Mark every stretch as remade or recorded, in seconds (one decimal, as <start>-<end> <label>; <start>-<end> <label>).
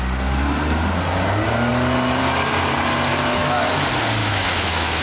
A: 0.0-3.1 recorded; 3.1-3.7 remade; 3.7-4.2 recorded; 4.2-5.0 remade